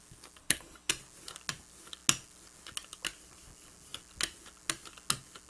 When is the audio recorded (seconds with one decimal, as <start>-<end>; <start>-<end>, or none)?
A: 0.0-0.4; 0.9-5.5